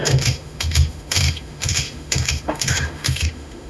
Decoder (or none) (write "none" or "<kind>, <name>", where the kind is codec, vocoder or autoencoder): autoencoder, DAC-VAE